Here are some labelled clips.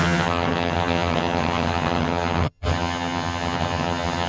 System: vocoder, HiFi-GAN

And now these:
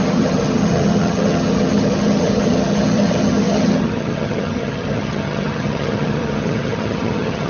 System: vocoder, HiFi-GAN